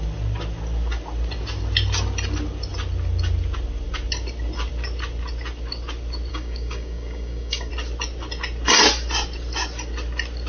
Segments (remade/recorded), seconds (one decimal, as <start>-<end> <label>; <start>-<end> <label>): 0.0-6.3 recorded; 6.3-7.7 remade; 7.7-10.5 recorded